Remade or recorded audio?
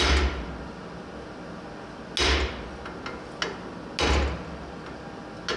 recorded